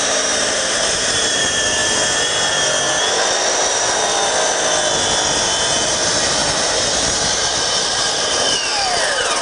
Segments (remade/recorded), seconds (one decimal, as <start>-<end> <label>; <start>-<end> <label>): 0.0-1.8 remade; 1.8-5.9 recorded; 5.9-9.4 remade